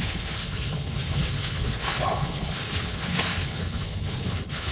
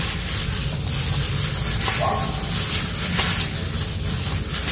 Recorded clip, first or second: second